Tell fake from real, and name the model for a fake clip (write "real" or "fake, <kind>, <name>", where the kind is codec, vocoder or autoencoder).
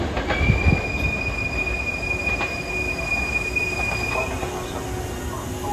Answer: real